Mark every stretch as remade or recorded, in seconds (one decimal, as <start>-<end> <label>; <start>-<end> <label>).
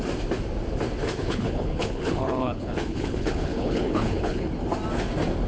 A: 0.0-1.2 recorded; 1.2-4.5 remade; 4.5-5.5 recorded